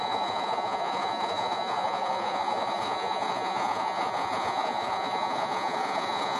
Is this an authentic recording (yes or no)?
no